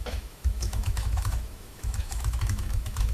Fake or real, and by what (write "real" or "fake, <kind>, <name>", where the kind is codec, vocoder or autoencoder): fake, autoencoder, DAC-VAE